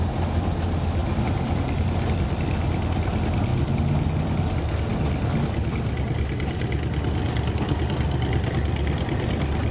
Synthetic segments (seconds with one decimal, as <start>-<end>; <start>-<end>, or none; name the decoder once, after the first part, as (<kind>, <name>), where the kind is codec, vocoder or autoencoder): 1.0-1.7 (vocoder, BigVGAN v2)

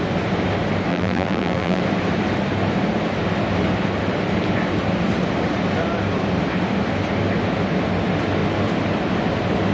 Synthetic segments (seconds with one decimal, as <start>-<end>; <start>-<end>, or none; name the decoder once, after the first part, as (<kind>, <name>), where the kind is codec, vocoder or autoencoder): 0.9-1.8 (vocoder, BigVGAN v2)

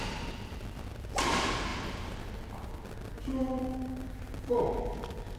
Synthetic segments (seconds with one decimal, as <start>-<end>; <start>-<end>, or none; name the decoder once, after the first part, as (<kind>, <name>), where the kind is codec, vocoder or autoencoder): none